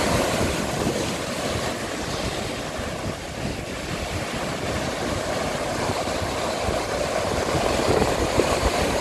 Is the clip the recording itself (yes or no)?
yes